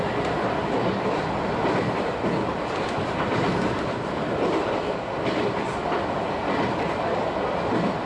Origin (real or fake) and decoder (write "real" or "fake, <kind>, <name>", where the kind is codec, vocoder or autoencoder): real